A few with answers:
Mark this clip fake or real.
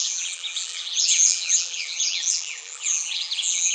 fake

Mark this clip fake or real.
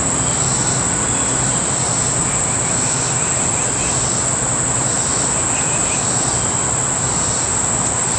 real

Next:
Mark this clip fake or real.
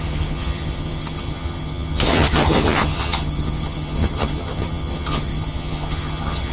fake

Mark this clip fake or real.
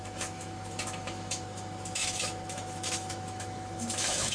fake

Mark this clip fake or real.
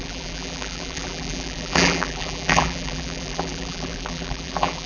fake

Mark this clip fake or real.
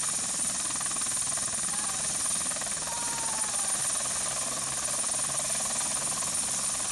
fake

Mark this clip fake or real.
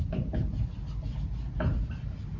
real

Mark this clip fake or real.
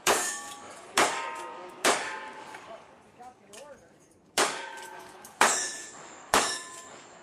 fake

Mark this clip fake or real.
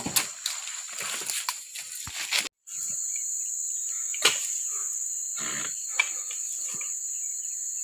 real